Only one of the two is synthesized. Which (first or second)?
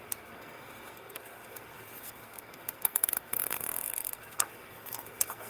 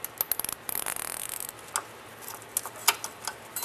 first